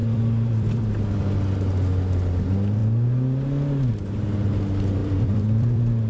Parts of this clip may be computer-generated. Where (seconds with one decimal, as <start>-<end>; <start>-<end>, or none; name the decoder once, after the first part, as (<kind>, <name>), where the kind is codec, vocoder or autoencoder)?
0.0-1.0 (vocoder, BigVGAN v2); 5.0-6.1